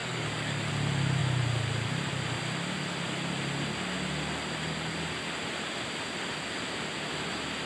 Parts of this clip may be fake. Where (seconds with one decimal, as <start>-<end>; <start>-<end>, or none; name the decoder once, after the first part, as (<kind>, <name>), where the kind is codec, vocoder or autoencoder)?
0.0-0.7 (codec, DAC)